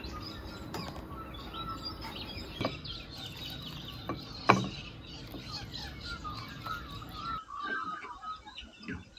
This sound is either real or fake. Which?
real